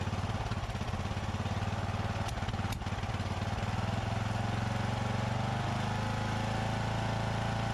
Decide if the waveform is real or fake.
real